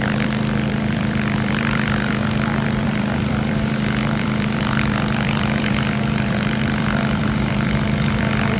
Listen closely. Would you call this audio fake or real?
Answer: fake